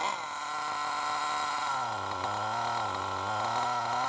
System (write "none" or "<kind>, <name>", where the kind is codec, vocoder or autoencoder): none